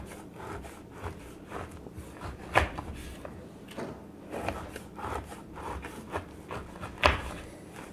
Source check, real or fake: fake